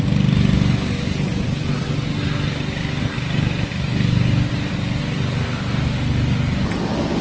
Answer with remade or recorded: recorded